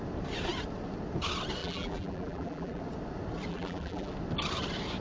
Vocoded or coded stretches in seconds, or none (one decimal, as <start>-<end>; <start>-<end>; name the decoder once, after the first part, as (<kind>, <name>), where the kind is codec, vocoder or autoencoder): 1.6-2.8 (vocoder, BigVGAN v2); 3.5-4.1